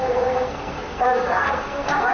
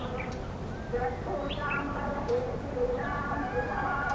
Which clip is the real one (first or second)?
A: second